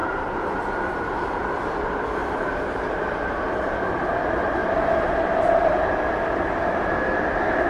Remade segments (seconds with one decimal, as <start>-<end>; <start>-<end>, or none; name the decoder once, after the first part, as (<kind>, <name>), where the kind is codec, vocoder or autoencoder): 0.0-1.4 (vocoder, BigVGAN v2); 2.2-3.8; 4.6-5.9